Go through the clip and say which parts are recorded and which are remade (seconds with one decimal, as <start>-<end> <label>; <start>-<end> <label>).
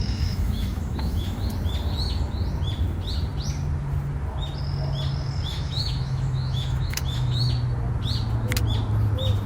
0.0-1.5 remade; 1.5-5.5 recorded; 5.5-7.4 remade; 7.4-9.5 recorded